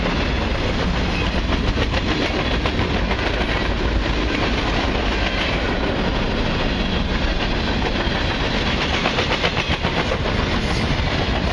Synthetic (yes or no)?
no